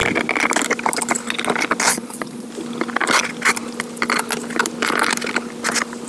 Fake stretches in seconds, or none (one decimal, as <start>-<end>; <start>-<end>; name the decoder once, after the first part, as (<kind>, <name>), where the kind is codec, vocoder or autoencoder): 1.9-2.5 (vocoder, Vocos)